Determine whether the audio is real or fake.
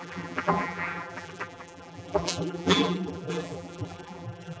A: fake